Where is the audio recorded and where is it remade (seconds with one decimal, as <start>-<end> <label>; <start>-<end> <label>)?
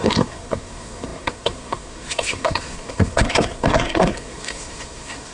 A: 0.0-5.3 remade